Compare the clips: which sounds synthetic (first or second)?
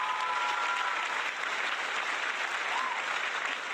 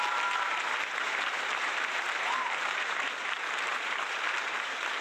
second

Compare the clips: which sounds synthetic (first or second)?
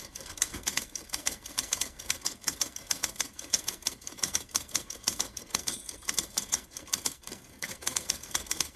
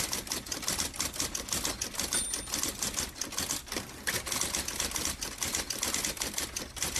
first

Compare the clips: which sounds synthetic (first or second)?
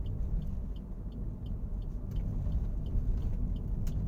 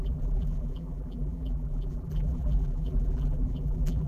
second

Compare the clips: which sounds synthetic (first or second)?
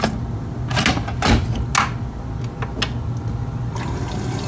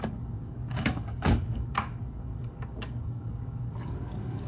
second